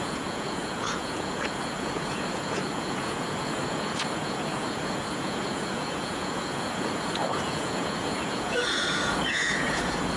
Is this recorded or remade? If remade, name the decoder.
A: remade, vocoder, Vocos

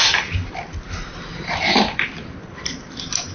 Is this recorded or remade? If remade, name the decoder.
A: recorded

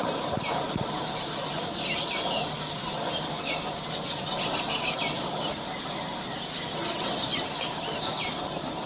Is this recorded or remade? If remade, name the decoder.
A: recorded